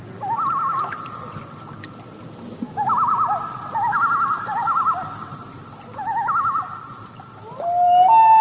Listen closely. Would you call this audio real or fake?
real